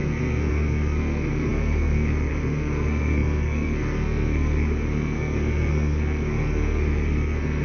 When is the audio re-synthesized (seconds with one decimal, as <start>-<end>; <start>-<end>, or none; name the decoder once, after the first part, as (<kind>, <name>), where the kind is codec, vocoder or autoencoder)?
0.0-7.6 (codec, SNAC)